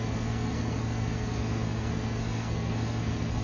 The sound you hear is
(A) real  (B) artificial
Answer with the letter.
B